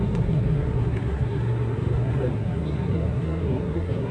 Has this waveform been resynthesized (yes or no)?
yes